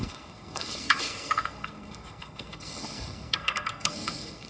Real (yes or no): no